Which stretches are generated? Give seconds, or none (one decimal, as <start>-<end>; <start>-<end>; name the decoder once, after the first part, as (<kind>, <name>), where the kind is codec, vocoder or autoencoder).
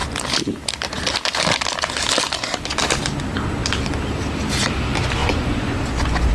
5.2-6.3 (vocoder, Vocos)